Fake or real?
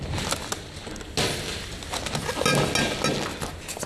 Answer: real